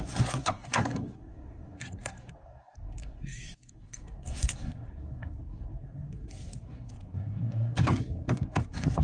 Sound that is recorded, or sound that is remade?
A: remade